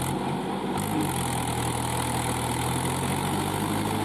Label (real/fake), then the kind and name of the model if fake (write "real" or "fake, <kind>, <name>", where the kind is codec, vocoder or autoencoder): real